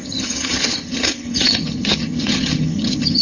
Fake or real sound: fake